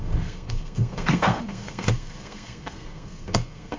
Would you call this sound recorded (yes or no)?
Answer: no